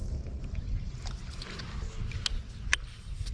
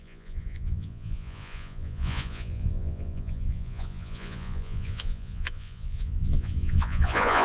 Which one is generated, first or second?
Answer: second